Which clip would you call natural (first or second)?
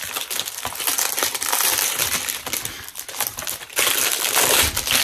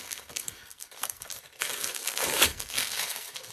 first